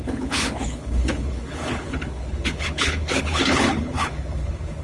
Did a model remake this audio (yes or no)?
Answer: yes